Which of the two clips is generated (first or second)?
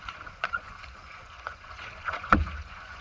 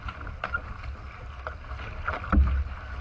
first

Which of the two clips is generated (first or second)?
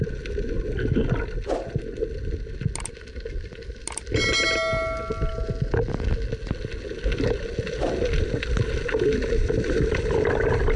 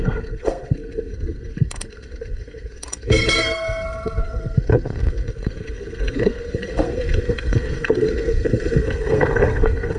second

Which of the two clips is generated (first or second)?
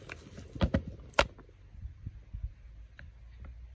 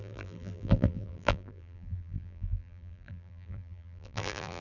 second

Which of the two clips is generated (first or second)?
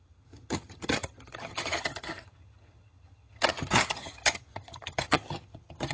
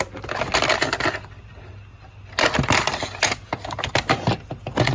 first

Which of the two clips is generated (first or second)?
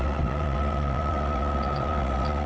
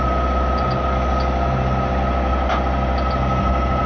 first